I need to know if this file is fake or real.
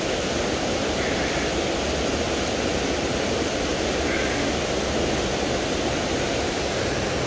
real